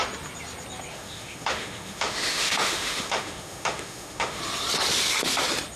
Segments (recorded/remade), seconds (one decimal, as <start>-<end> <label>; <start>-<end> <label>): 0.0-0.9 recorded; 0.9-4.4 remade; 4.4-5.8 recorded